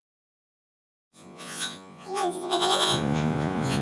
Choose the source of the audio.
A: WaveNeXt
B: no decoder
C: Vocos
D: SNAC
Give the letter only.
C